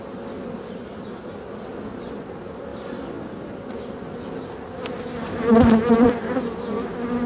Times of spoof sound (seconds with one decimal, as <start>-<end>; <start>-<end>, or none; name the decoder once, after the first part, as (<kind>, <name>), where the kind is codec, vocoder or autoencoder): none